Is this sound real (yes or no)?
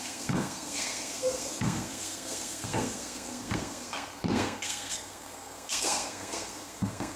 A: no